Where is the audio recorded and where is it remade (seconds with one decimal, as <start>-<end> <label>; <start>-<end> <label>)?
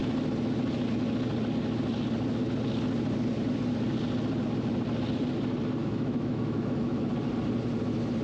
0.0-5.8 recorded; 5.8-7.1 remade; 7.1-8.2 recorded